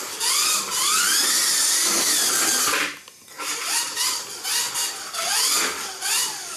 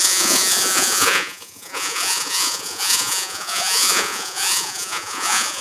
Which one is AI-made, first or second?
second